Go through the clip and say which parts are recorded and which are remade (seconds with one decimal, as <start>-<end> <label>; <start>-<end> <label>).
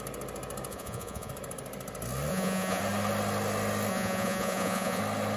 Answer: 0.0-0.7 recorded; 0.7-1.3 remade; 1.3-2.3 recorded; 2.3-2.8 remade; 2.8-3.9 recorded; 3.9-5.0 remade; 5.0-5.4 recorded